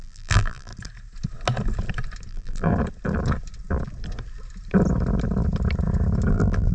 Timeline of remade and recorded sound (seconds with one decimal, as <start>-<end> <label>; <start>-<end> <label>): 0.0-0.7 remade; 0.7-2.3 recorded; 2.3-2.7 remade; 2.7-6.3 recorded; 6.3-6.7 remade